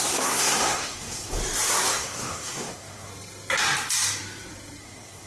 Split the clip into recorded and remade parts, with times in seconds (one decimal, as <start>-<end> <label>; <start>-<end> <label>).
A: 0.0-1.4 remade; 1.4-1.9 recorded; 1.9-3.1 remade; 3.1-4.8 recorded; 4.8-5.3 remade